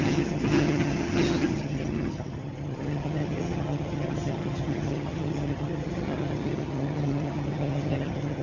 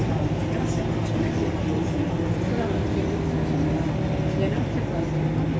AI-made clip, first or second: first